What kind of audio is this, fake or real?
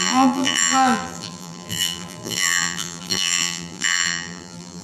fake